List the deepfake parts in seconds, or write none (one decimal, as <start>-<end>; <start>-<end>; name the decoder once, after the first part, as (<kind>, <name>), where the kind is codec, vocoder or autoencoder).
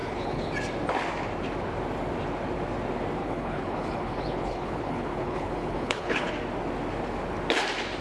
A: 0.0-0.5 (codec, HILCodec); 3.2-6.3